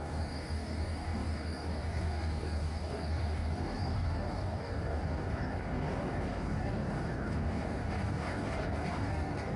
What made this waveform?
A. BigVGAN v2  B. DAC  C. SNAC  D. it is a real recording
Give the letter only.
B